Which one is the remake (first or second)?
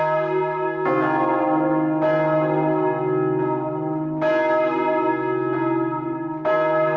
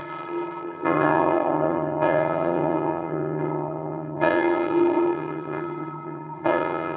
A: second